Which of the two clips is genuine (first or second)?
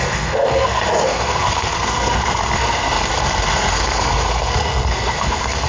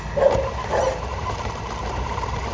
second